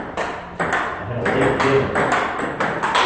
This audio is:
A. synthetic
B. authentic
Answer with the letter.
B